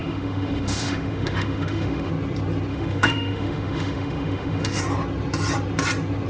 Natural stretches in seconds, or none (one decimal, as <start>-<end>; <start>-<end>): 2.1-2.7; 4.8-6.3